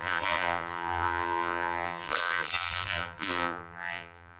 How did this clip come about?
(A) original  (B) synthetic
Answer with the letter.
B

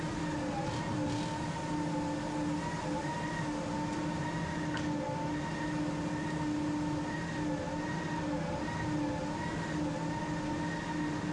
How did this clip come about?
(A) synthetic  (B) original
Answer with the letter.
B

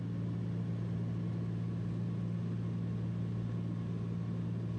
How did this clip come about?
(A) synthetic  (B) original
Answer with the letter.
B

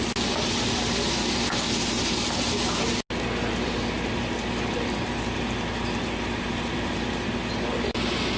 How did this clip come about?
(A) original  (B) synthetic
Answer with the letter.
A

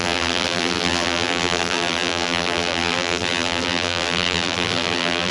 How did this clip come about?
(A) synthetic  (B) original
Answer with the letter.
A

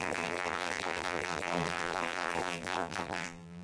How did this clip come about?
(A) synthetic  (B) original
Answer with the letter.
A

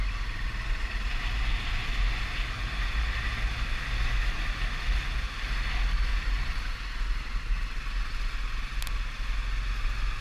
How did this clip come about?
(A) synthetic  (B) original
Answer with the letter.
B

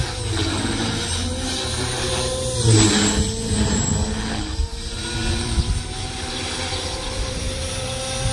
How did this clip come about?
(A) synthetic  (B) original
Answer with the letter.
A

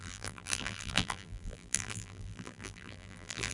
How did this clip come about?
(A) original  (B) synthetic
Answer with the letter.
B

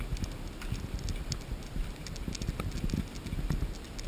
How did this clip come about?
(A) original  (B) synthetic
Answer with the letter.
A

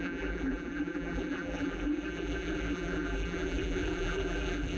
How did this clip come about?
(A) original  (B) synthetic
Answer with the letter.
B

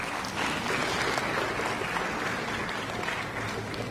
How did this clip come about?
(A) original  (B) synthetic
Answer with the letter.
A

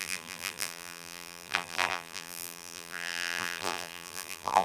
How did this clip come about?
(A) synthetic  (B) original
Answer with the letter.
A